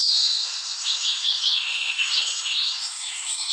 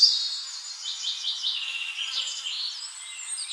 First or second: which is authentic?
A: second